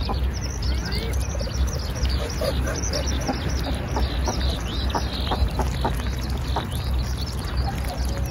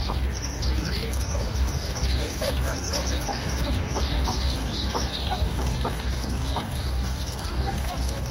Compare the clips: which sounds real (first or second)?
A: first